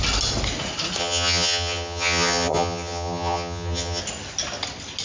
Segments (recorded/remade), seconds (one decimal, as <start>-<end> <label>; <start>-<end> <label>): 0.0-1.0 recorded; 1.0-4.0 remade; 4.0-5.0 recorded